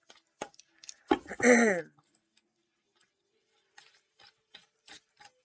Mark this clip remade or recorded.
recorded